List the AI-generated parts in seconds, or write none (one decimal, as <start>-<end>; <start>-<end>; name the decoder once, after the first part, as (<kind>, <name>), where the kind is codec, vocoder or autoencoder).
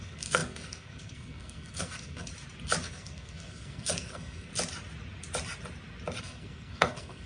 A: 0.0-2.3 (codec, SNAC); 2.8-4.5; 6.2-7.3